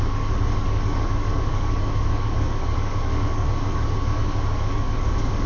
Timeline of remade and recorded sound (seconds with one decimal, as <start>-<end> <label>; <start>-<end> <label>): 0.0-5.5 remade